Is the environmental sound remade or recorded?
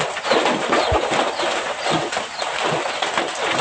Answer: recorded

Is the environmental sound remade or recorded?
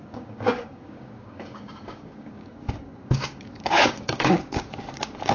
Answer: remade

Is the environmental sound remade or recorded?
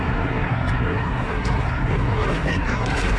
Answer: remade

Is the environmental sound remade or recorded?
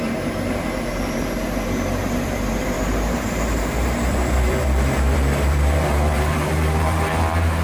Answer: remade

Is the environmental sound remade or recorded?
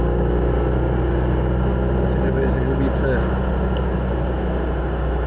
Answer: recorded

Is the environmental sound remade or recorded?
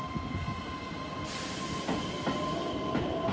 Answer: recorded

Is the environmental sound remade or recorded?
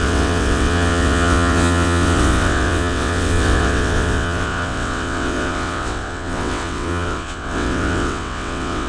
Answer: remade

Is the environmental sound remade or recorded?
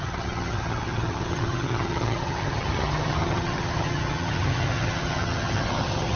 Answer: remade